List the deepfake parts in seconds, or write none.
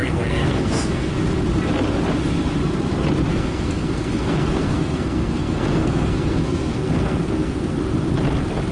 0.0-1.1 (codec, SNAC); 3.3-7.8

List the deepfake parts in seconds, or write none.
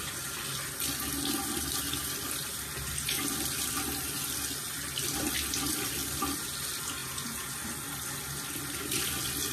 7.0-7.5 (vocoder, Vocos)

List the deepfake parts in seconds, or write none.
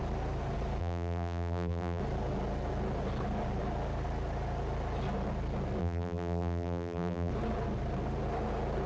0.8-2.0 (vocoder, BigVGAN v2); 5.8-7.3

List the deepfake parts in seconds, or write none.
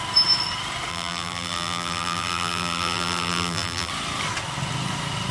0.9-3.9 (vocoder, BigVGAN v2)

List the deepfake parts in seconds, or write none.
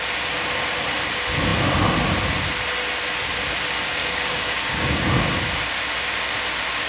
4.0-5.2 (codec, DAC)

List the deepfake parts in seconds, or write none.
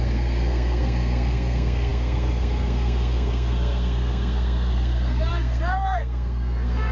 0.0-6.9 (codec, SNAC)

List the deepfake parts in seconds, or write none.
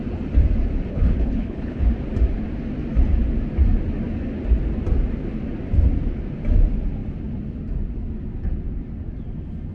0.9-1.9 (codec, HILCodec)